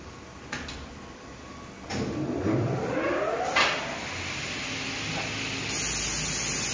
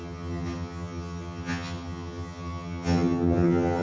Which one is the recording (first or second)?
first